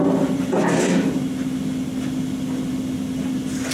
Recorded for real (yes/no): yes